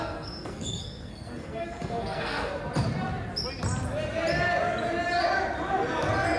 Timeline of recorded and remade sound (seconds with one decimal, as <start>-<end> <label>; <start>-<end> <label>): 0.0-2.6 remade; 2.6-6.4 recorded